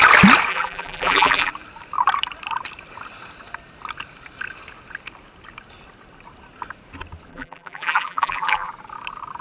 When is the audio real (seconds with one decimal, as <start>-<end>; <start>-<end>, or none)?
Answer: 0.0-0.5; 1.5-7.3; 8.7-9.4